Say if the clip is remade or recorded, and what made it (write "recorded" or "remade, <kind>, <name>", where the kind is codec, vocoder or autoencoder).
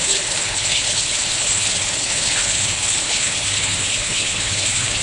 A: remade, codec, HILCodec